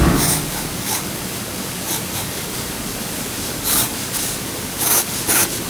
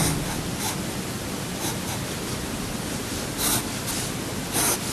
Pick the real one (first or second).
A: second